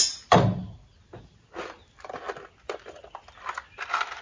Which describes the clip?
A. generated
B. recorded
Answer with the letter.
B